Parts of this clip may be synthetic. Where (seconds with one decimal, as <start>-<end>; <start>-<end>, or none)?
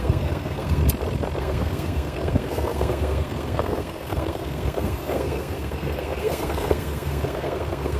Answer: 0.0-0.8; 1.4-8.0